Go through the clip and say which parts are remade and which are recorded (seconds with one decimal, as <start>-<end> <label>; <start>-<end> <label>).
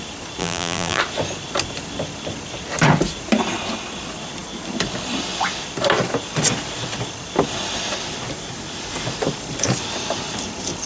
0.0-0.4 recorded; 0.4-1.0 remade; 1.0-10.9 recorded